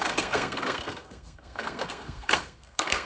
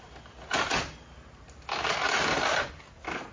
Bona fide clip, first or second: second